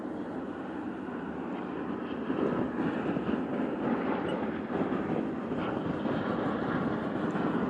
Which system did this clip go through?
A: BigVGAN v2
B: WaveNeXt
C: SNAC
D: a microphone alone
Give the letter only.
D